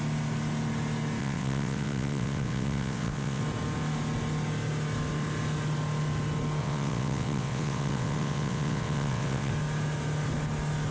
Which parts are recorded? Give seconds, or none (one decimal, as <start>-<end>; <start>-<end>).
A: 0.0-1.2; 3.4-6.6; 9.5-10.9